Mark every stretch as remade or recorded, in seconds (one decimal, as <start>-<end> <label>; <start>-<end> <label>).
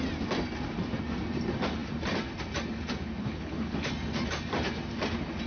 0.0-3.2 recorded; 3.2-3.9 remade; 3.9-5.5 recorded